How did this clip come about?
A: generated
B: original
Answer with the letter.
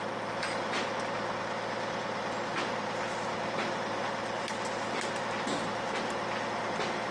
B